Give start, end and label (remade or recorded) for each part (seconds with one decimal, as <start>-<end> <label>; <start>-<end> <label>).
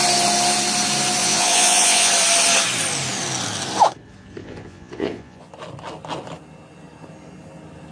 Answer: 0.0-1.2 recorded; 1.2-2.1 remade; 2.1-4.4 recorded; 4.4-5.5 remade; 5.5-7.9 recorded